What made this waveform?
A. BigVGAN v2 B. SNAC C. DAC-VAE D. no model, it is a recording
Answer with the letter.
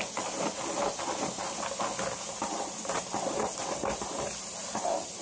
D